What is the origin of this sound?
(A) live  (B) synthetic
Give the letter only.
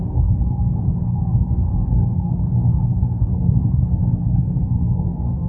B